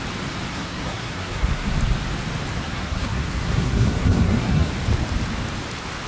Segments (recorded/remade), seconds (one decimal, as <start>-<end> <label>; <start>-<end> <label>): 0.0-0.5 recorded; 0.5-1.7 remade; 1.7-2.6 recorded; 2.6-4.7 remade; 4.7-6.1 recorded